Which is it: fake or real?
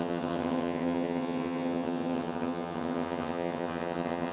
fake